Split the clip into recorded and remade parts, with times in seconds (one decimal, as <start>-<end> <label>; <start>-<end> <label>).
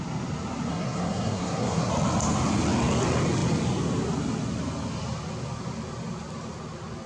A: 0.0-0.7 recorded; 0.7-1.9 remade; 1.9-7.1 recorded